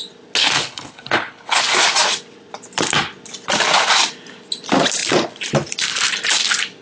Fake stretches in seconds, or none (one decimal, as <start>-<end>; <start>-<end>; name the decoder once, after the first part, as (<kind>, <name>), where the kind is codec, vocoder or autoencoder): 0.4-1.6 (codec, HILCodec)